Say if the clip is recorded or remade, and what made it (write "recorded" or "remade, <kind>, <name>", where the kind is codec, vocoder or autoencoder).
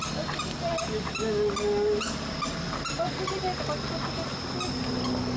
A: recorded